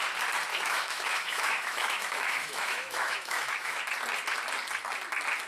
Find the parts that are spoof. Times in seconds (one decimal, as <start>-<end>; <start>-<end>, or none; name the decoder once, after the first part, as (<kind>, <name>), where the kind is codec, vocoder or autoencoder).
0.5-3.8 (autoencoder, DAC-VAE)